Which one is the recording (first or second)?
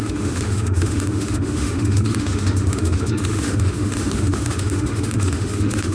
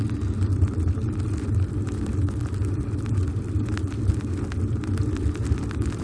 second